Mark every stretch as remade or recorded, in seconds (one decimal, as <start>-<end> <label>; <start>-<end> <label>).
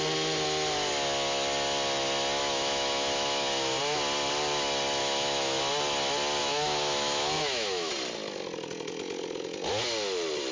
0.0-2.4 recorded; 2.4-3.8 remade; 3.8-5.0 recorded; 5.0-5.6 remade; 5.6-6.4 recorded; 6.4-7.9 remade; 7.9-10.5 recorded